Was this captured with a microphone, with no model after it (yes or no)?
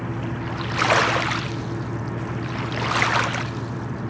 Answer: yes